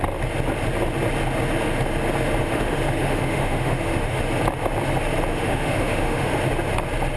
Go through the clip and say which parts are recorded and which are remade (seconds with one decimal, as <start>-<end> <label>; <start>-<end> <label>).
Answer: 0.0-2.4 recorded; 2.4-4.2 remade; 4.2-5.3 recorded; 5.3-6.3 remade; 6.3-7.2 recorded

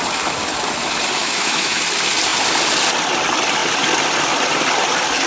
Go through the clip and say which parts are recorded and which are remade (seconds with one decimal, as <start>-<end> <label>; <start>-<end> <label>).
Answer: 0.0-1.2 recorded; 1.2-1.8 remade; 1.8-5.3 recorded

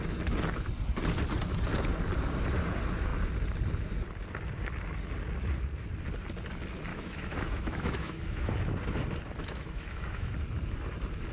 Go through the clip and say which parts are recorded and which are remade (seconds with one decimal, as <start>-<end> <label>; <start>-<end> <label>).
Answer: 0.0-6.9 recorded; 6.9-8.5 remade; 8.5-9.4 recorded; 9.4-10.3 remade; 10.3-11.3 recorded

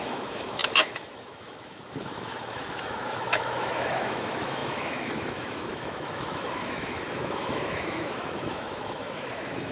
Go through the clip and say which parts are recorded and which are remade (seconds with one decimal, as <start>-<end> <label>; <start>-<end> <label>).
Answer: 0.0-9.7 remade